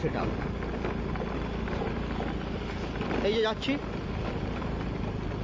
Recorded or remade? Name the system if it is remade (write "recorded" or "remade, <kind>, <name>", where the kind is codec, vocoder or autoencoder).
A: recorded